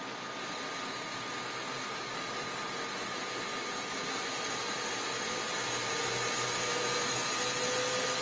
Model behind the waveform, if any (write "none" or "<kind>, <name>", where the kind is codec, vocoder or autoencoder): none